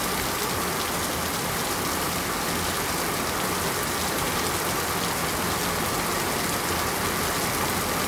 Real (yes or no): yes